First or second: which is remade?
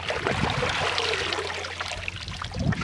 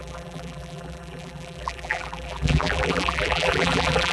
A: second